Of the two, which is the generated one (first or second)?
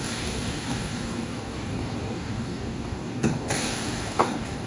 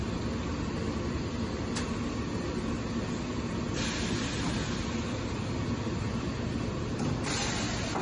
first